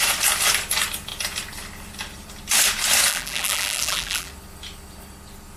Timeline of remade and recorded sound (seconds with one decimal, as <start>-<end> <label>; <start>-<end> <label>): 0.0-3.1 recorded; 3.1-4.3 remade; 4.3-5.6 recorded